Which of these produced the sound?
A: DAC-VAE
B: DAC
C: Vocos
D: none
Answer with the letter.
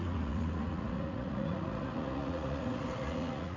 C